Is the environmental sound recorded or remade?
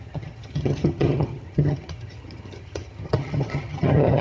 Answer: remade